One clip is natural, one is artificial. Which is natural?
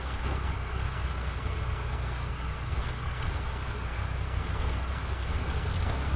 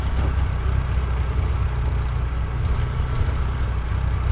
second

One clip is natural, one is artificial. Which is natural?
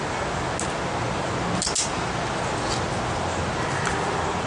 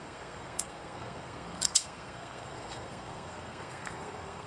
first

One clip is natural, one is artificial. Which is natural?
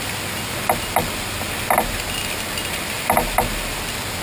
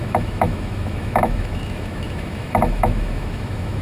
first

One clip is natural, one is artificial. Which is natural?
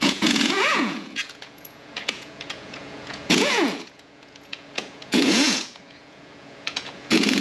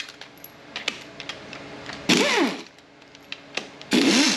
second